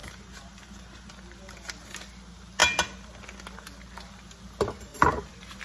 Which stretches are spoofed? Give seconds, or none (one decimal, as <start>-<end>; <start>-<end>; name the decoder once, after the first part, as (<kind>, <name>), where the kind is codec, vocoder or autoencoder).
0.0-1.1 (vocoder, BigVGAN v2); 4.9-5.6